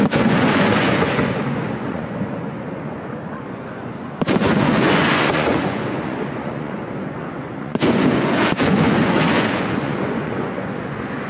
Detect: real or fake fake